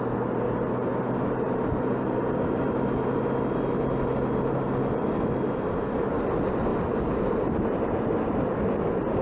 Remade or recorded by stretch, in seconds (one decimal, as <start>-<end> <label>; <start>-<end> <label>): 0.0-9.2 recorded